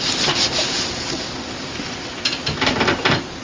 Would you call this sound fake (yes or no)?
yes